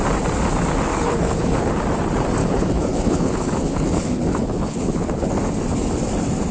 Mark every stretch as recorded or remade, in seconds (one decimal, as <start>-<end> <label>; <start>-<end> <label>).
0.0-0.9 recorded; 0.9-1.8 remade; 1.8-2.4 recorded; 2.4-5.3 remade; 5.3-6.5 recorded